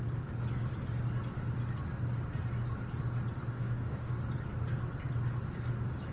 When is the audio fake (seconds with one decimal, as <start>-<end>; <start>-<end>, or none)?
3.5-4.1